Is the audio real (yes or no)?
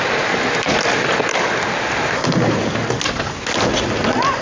yes